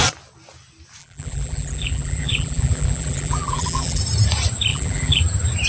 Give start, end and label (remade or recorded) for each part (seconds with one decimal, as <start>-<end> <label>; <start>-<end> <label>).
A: 0.0-1.0 recorded; 1.0-4.0 remade; 4.0-4.7 recorded; 4.7-5.2 remade; 5.2-5.7 recorded